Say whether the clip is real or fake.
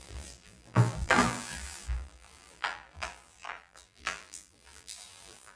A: fake